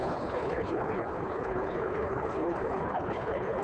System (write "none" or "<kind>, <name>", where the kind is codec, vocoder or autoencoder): codec, HILCodec